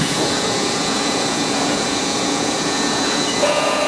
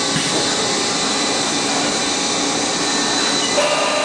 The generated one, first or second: first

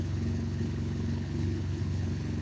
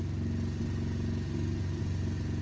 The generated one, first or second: first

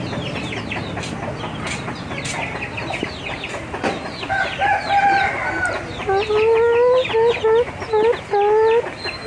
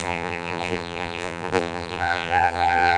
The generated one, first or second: second